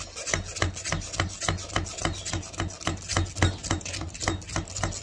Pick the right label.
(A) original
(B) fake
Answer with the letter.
A